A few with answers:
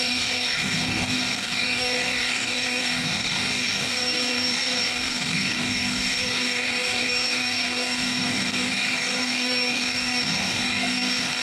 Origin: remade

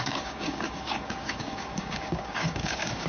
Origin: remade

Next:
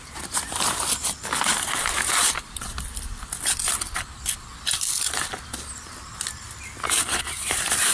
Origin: recorded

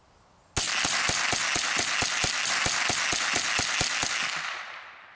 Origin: recorded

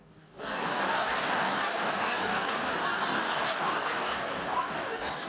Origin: remade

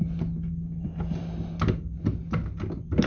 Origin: recorded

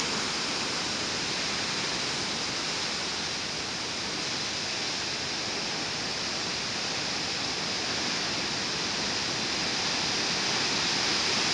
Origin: recorded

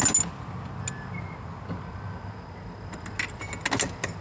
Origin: recorded